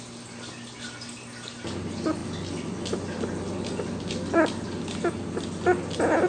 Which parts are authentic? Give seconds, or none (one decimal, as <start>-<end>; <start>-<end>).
0.0-6.3